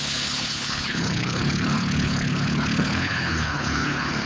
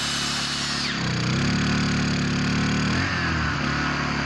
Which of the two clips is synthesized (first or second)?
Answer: first